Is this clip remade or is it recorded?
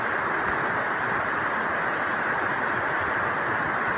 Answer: recorded